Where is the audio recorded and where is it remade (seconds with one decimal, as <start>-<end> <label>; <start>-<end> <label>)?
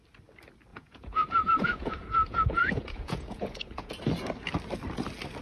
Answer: 0.0-0.7 recorded; 0.7-3.9 remade; 3.9-5.4 recorded